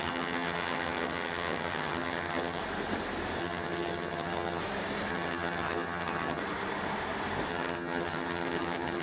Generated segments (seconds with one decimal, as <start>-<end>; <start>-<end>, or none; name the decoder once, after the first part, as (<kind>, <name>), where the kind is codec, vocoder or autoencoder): 0.0-2.6 (vocoder, HiFi-GAN); 3.4-4.6; 5.1-6.4; 7.5-9.0